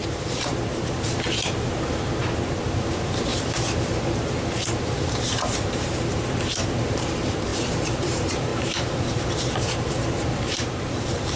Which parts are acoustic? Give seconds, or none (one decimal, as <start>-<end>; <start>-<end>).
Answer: 7.5-8.0